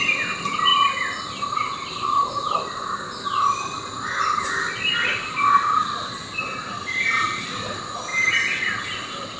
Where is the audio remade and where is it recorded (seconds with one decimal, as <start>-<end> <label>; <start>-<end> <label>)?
0.0-9.4 recorded